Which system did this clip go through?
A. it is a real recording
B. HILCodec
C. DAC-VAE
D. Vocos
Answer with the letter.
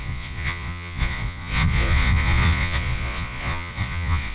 D